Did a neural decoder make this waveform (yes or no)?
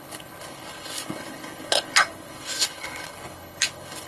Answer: yes